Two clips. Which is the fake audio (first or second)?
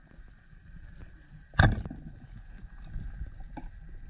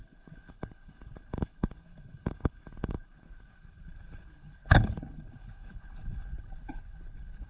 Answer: second